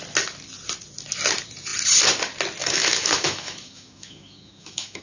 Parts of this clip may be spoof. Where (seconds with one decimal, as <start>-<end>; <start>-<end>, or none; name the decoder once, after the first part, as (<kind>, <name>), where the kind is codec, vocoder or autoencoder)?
2.6-5.0 (autoencoder, DAC-VAE)